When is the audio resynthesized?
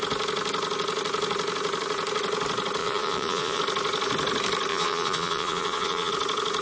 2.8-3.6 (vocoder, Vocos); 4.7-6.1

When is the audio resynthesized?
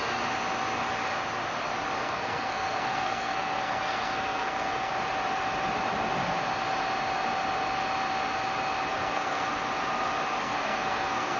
2.0-4.9 (codec, SNAC); 8.9-9.5; 10.4-11.4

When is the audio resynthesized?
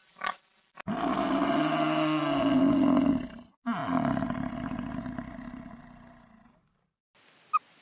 none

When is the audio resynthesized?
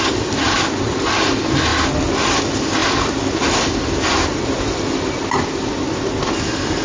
none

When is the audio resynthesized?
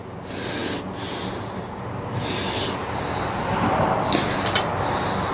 none